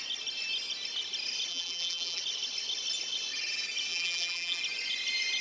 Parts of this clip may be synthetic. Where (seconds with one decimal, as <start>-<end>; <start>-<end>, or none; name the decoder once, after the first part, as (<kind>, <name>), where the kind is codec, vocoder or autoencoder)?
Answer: 1.5-2.2 (vocoder, BigVGAN v2); 3.9-4.6